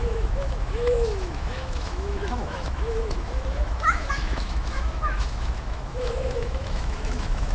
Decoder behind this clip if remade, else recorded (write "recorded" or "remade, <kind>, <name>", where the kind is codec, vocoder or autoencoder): remade, autoencoder, DAC-VAE